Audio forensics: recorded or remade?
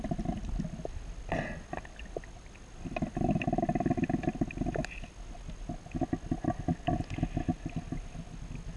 recorded